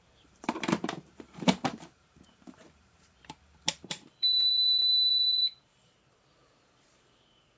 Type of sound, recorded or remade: remade